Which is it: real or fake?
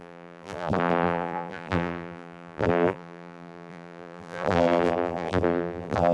fake